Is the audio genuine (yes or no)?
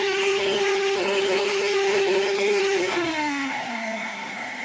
no